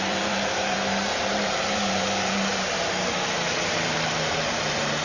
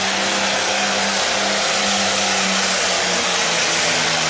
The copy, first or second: first